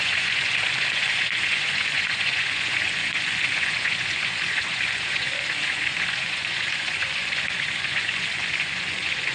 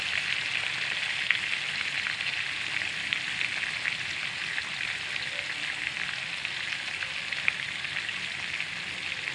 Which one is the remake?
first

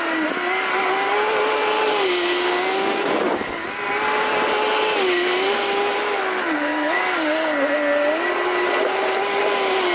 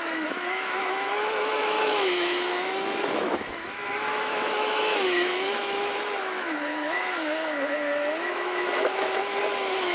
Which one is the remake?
second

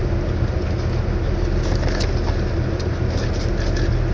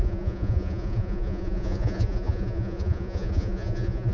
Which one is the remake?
second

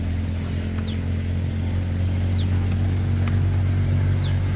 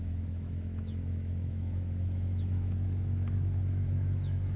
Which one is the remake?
second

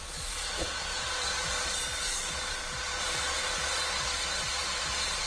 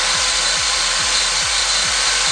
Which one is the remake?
first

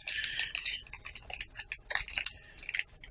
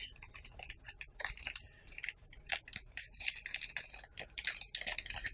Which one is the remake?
second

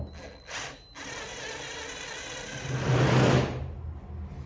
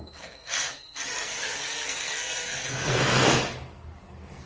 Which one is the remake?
second